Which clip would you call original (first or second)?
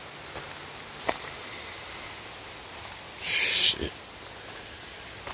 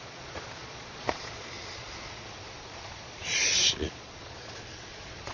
first